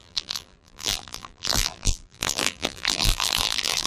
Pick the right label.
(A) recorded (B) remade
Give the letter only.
B